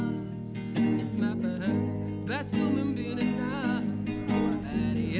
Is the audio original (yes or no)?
yes